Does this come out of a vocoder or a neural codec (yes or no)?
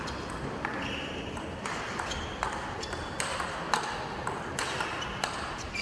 no